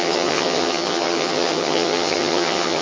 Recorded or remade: remade